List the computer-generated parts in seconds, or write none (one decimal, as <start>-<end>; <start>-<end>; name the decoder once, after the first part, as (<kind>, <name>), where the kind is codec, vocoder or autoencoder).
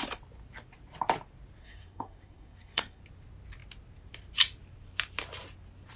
1.6-3.0 (codec, SNAC)